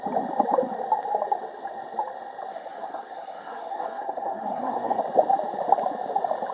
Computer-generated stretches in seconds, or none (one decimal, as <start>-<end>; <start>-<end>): 2.5-5.0